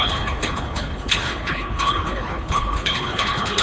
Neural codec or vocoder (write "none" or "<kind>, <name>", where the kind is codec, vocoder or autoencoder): codec, HILCodec